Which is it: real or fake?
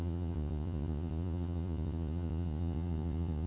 fake